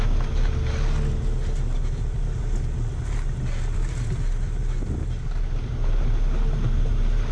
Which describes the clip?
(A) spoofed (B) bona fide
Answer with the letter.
B